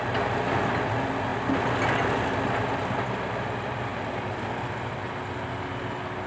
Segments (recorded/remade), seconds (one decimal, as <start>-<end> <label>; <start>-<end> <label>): 0.0-6.3 recorded